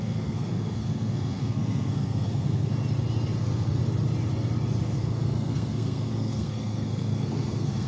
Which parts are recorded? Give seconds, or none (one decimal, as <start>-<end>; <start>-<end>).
2.7-3.4; 3.8-4.9